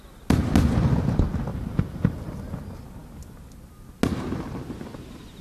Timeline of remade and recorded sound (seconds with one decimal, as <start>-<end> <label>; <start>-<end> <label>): 0.0-1.5 recorded; 1.5-2.6 remade; 2.6-5.4 recorded